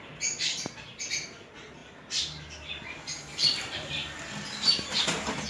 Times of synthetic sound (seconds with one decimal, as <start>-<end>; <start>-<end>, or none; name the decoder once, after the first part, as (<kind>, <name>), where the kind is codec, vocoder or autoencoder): none